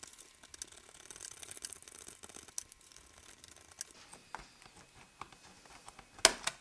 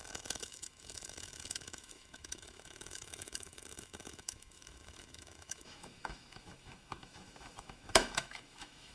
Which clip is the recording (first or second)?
first